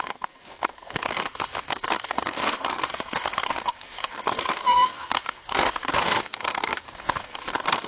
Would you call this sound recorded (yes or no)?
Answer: no